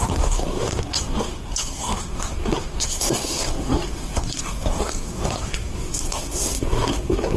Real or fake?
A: fake